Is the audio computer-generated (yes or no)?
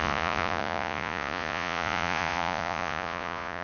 yes